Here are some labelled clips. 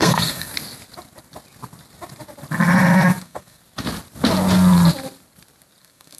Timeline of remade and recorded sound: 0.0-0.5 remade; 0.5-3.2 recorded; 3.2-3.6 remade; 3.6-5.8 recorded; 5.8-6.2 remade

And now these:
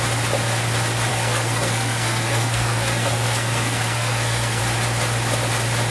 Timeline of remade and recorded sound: 0.0-1.1 recorded; 1.1-4.6 remade; 4.6-5.9 recorded